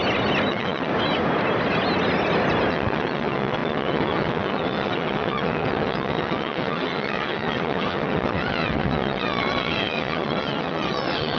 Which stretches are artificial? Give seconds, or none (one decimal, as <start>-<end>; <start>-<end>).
0.5-0.9; 2.7-11.4